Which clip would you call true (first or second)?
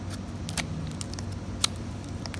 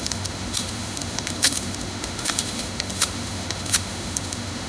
first